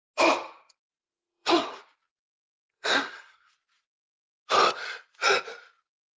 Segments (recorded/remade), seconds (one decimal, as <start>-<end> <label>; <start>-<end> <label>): 0.0-0.9 recorded; 0.9-1.8 remade; 1.8-2.7 recorded; 2.7-3.5 remade; 3.5-6.2 recorded